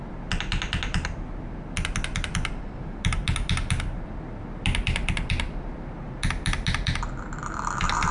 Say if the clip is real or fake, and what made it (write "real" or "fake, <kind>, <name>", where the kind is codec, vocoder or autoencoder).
real